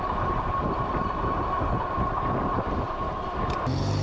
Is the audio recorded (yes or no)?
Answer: no